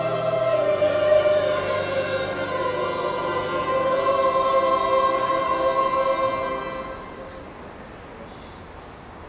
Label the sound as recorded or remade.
recorded